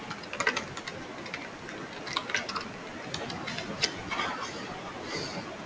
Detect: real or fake real